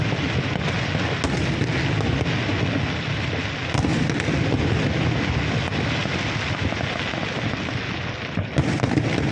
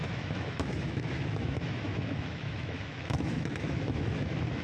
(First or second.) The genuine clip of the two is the first